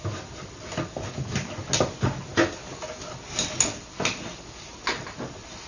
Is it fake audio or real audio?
real